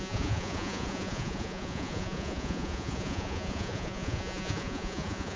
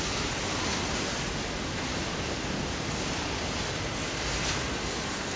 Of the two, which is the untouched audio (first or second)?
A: second